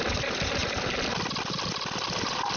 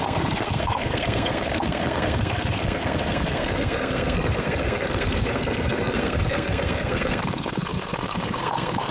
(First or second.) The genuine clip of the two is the first